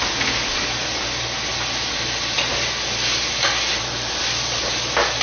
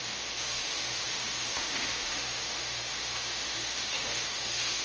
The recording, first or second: first